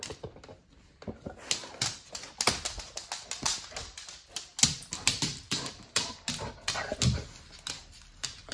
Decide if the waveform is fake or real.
real